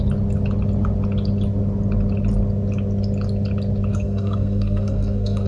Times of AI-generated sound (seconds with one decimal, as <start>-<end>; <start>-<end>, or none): 3.9-5.5